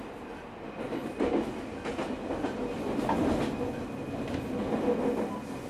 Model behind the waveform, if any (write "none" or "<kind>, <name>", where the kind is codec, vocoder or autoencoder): none